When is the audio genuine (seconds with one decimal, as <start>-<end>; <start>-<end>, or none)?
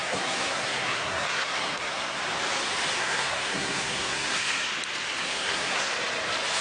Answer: 2.2-3.0; 4.7-5.2; 5.9-6.6